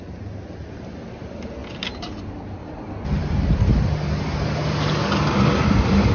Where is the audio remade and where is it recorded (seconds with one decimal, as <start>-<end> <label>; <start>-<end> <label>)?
0.0-6.1 recorded